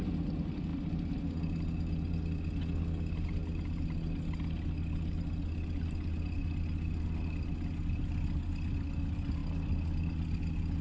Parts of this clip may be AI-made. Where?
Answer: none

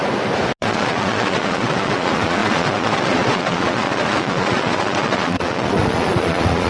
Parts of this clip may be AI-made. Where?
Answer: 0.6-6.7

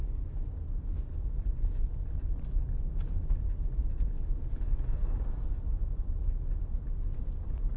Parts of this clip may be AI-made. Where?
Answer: none

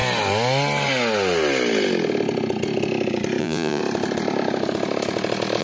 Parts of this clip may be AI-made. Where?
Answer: 3.4-3.8

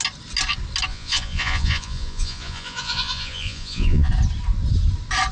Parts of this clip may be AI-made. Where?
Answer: 0.9-4.1

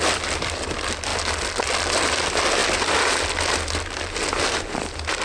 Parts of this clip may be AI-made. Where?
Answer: none